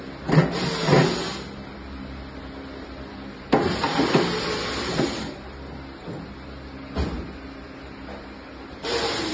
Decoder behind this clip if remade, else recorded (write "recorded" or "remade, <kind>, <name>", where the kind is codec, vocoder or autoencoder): recorded